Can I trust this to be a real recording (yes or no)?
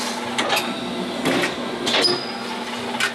yes